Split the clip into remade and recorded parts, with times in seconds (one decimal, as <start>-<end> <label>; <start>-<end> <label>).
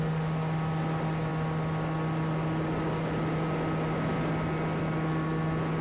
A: 0.0-5.8 recorded